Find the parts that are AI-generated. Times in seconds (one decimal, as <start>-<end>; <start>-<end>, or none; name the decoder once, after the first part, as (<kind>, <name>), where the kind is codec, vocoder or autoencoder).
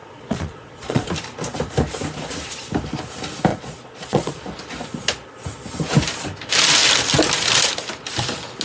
0.0-1.1 (vocoder, Vocos); 3.5-4.3